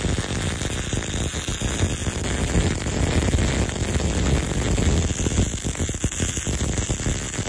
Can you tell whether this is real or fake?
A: real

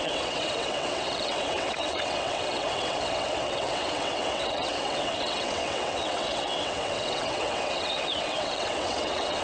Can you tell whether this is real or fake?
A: fake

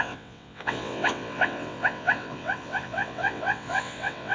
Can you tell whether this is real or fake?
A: fake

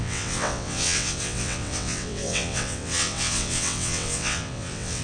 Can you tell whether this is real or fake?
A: fake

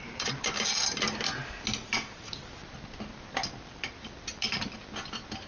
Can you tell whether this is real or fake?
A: real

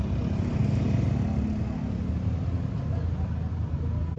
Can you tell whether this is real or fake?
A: real